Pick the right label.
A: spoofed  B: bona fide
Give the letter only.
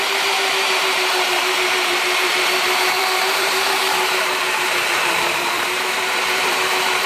A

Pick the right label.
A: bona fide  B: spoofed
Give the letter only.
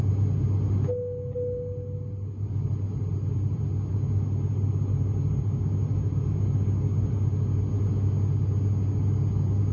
A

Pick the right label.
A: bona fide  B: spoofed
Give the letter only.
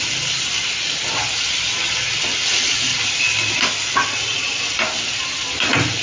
A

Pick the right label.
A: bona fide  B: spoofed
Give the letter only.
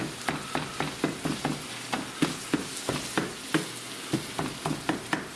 A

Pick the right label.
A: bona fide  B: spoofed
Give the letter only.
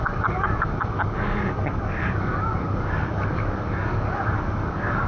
B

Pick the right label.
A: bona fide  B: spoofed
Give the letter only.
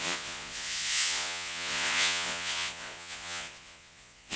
B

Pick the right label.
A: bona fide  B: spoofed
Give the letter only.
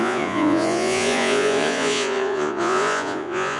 B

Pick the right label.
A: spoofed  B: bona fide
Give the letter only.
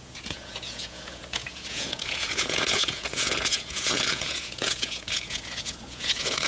A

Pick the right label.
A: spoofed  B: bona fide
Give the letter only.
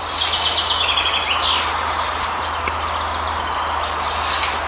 B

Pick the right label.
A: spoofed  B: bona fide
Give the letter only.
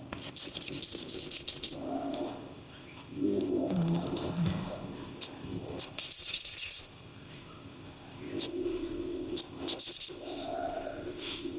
A